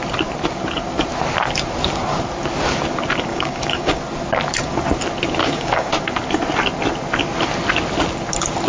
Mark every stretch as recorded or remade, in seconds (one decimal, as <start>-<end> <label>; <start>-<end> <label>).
0.0-3.3 recorded; 3.3-4.0 remade; 4.0-5.4 recorded; 5.4-5.9 remade; 5.9-8.7 recorded